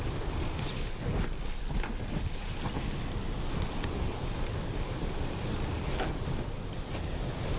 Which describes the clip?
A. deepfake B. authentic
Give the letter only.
B